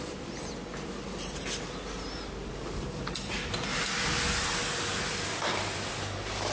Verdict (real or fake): real